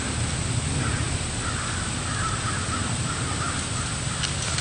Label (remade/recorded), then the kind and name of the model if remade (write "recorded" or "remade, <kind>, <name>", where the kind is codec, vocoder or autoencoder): recorded